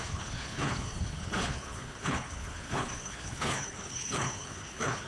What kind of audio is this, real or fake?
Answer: fake